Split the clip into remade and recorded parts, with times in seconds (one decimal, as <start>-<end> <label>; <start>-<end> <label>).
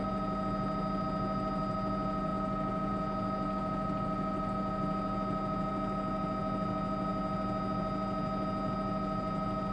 0.0-9.7 recorded